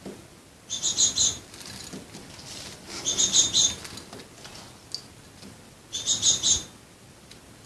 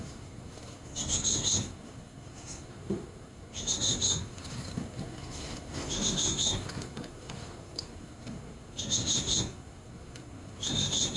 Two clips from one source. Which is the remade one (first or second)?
second